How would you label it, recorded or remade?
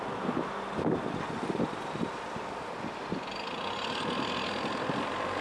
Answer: recorded